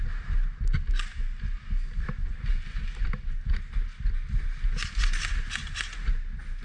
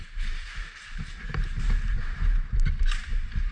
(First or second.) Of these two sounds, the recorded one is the first